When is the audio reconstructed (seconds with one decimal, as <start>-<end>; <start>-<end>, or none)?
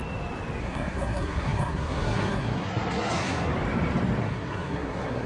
0.6-3.5; 4.2-5.3